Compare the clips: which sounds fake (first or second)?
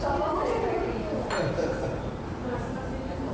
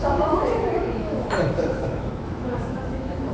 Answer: second